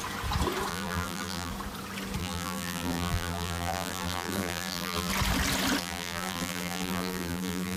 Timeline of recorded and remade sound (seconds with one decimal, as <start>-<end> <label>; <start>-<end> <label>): 0.0-0.7 recorded; 0.7-1.5 remade; 1.5-2.2 recorded; 2.2-5.1 remade; 5.1-5.8 recorded; 5.8-7.8 remade